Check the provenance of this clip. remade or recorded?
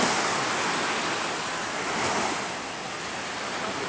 recorded